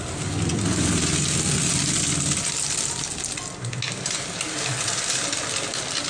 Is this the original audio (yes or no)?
yes